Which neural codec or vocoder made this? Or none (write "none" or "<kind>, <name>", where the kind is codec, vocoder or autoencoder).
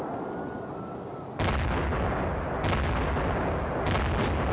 none